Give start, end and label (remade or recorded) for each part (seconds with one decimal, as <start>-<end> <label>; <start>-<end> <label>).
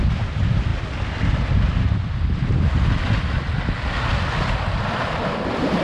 0.0-5.8 recorded